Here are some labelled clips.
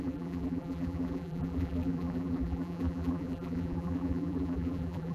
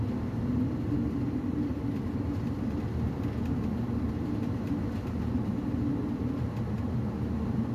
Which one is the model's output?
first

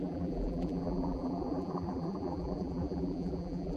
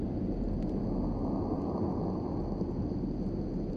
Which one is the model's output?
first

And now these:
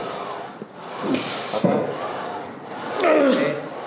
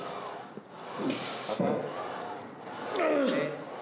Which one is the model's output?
first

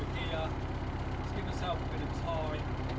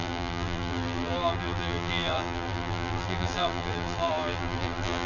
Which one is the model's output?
second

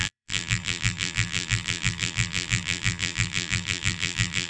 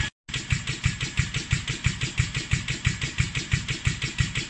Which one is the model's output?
first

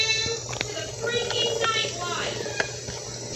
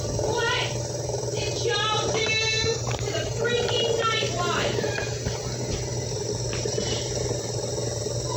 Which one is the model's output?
second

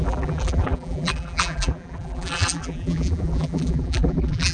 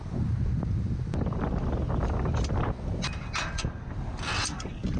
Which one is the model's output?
first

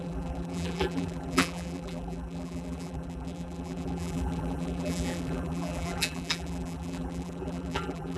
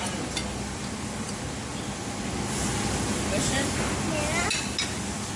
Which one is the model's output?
first